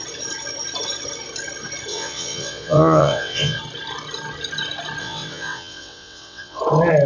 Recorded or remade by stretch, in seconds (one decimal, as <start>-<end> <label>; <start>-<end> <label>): 0.0-1.9 recorded; 1.9-3.6 remade; 3.6-5.0 recorded; 5.0-6.6 remade; 6.6-7.1 recorded